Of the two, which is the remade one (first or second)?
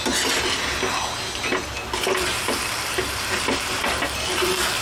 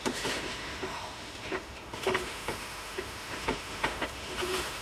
second